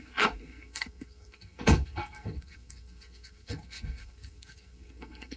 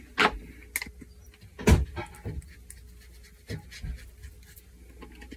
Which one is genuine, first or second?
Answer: second